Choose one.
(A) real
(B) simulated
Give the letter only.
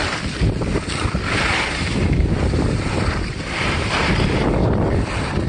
B